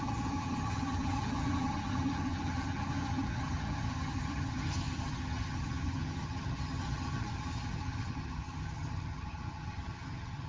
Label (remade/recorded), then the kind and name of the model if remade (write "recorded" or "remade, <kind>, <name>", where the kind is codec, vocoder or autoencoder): remade, vocoder, HiFi-GAN